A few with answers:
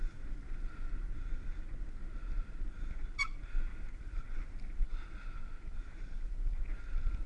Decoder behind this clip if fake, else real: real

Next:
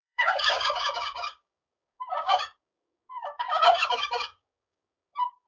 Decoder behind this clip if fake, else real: fake, codec, DAC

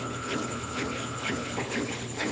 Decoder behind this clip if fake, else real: fake, codec, HILCodec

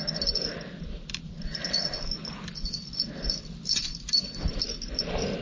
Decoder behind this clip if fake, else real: real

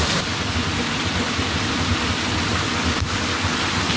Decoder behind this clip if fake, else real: real